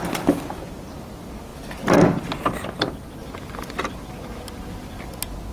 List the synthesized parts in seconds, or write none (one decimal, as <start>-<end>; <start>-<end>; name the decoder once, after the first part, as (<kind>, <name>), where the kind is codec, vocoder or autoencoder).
none